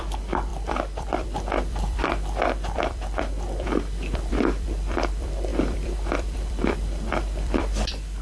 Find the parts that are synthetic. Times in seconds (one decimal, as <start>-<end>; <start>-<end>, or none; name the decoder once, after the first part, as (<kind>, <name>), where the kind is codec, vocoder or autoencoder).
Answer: 0.0-8.2 (vocoder, BigVGAN v2)